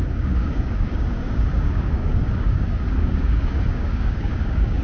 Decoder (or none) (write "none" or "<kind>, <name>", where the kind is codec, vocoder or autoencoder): codec, DAC